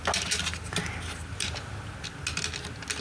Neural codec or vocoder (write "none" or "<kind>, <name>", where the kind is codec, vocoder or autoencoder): none